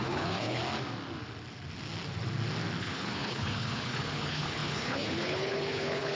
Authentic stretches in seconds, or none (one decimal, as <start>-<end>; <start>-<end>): 0.6-2.8